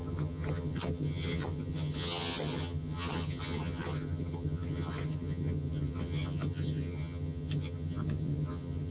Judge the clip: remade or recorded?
remade